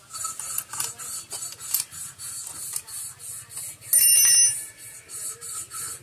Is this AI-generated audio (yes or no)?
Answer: no